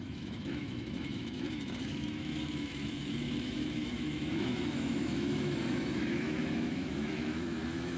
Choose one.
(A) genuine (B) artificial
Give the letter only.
B